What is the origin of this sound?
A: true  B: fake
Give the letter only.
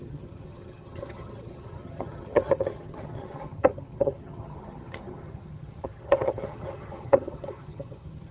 B